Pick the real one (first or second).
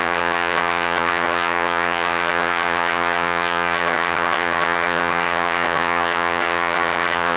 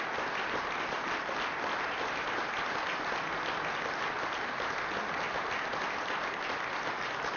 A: second